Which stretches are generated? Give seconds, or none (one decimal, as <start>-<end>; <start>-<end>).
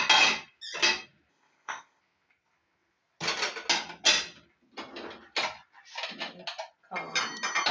1.3-2.0